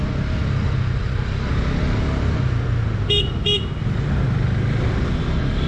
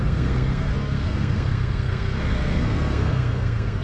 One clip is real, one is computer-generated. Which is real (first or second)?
first